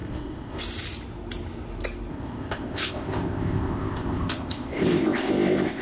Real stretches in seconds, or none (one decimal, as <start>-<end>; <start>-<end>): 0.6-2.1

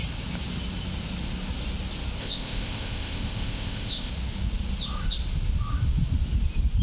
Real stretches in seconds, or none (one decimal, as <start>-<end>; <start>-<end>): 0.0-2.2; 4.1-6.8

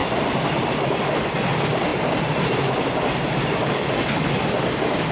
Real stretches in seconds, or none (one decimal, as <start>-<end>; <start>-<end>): 0.0-5.1